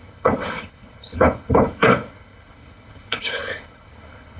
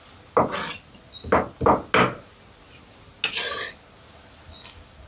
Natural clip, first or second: second